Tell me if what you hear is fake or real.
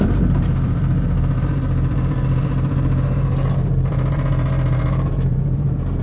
fake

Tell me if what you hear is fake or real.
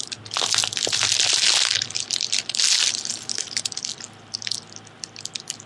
real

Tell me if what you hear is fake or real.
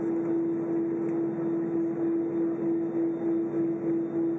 real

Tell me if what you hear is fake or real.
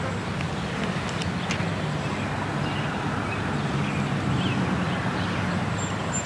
real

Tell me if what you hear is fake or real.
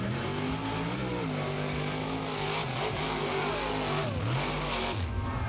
real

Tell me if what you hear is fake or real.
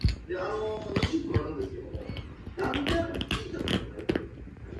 real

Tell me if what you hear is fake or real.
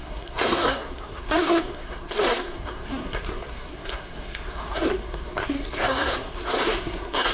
fake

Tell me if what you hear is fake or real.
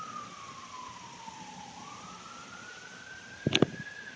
real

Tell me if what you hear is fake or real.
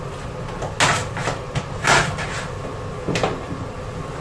real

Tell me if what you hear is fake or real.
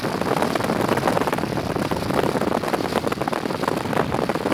real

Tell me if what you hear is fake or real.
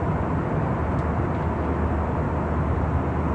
real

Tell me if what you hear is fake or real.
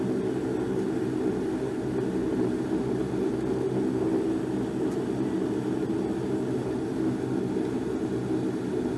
real